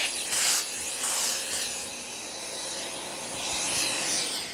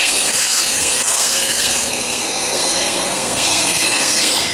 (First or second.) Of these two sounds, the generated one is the second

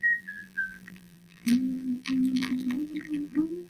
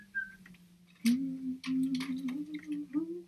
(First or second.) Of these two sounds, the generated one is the first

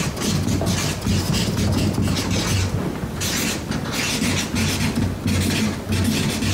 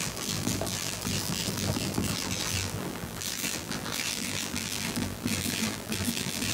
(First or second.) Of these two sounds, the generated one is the second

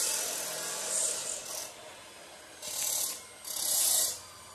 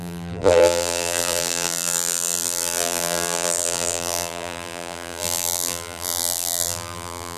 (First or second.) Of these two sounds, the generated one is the second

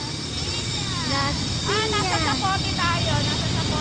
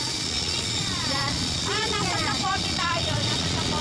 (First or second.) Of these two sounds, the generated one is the second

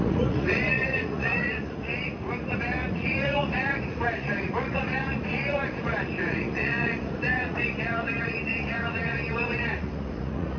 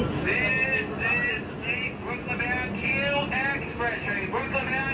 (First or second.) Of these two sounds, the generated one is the first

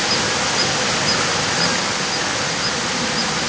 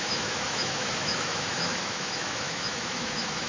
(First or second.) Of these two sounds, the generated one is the second